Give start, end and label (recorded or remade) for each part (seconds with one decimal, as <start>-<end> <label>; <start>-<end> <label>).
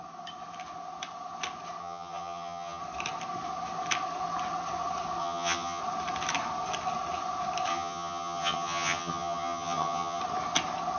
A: 0.0-1.8 recorded; 1.8-2.8 remade; 2.8-5.2 recorded; 5.2-5.8 remade; 5.8-7.7 recorded; 7.7-10.2 remade; 10.2-11.0 recorded